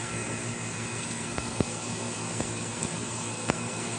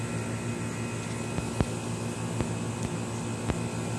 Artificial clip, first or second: first